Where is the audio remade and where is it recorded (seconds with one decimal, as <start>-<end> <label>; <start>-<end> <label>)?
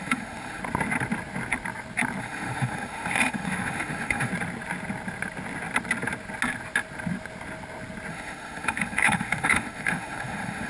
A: 0.0-0.6 remade; 0.6-2.2 recorded; 2.2-4.3 remade; 4.3-8.1 recorded; 8.1-10.7 remade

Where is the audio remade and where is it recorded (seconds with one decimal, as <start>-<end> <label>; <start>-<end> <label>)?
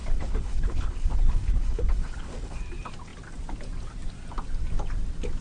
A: 0.0-2.6 remade; 2.6-5.4 recorded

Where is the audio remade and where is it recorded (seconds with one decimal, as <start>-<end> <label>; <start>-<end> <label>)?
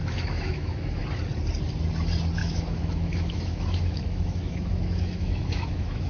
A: 0.0-1.0 remade; 1.0-2.4 recorded; 2.4-6.1 remade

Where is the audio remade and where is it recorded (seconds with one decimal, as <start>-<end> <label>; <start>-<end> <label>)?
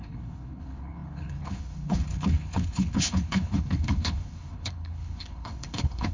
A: 0.0-6.1 remade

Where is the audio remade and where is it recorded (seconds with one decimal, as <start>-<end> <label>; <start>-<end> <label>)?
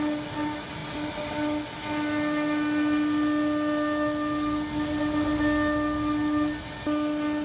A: 0.0-7.4 recorded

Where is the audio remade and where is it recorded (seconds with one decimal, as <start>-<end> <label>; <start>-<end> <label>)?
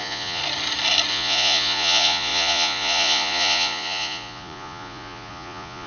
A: 0.0-0.4 remade; 0.4-1.1 recorded; 1.1-5.9 remade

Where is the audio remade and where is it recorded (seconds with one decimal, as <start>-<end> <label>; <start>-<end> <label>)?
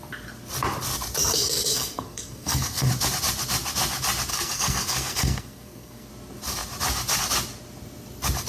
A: 0.0-1.3 recorded; 1.3-2.9 remade; 2.9-4.3 recorded; 4.3-6.1 remade; 6.1-8.5 recorded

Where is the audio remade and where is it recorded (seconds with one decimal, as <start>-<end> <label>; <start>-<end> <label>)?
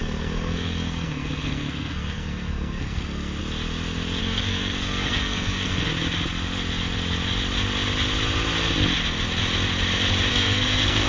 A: 0.0-3.4 remade; 3.4-4.2 recorded; 4.2-5.9 remade; 5.9-10.3 recorded; 10.3-11.1 remade